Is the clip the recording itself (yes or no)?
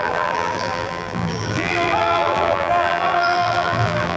no